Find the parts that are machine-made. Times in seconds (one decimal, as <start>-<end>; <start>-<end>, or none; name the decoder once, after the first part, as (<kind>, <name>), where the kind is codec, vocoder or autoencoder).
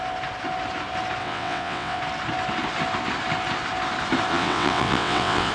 1.2-2.0 (vocoder, WaveNeXt); 4.3-5.5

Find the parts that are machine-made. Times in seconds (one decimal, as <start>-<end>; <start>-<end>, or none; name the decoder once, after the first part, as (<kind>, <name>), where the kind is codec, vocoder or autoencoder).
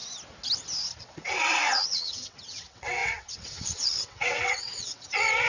1.0-5.5 (vocoder, WaveNeXt)